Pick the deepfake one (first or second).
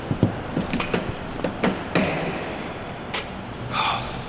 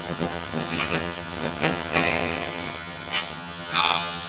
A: second